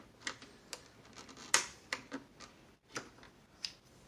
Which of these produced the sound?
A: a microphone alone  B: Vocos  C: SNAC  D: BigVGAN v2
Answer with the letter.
A